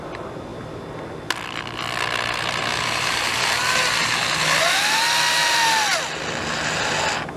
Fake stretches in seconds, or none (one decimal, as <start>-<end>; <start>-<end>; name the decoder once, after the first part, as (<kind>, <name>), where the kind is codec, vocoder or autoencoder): none